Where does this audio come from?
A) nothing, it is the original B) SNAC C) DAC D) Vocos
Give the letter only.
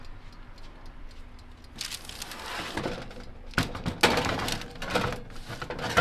A